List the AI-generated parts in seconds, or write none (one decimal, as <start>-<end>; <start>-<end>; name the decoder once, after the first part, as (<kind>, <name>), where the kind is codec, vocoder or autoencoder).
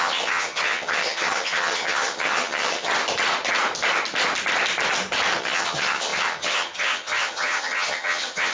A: 0.0-2.9 (vocoder, HiFi-GAN); 5.4-8.5